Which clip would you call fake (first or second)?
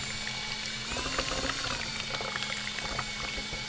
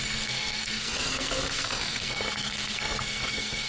second